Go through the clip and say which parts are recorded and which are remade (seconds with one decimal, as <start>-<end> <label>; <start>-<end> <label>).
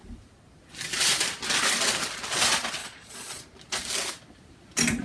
0.0-2.8 recorded; 2.8-3.4 remade; 3.4-5.0 recorded